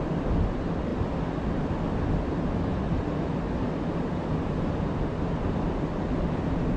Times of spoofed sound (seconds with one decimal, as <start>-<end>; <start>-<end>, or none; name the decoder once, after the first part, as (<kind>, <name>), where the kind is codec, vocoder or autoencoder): none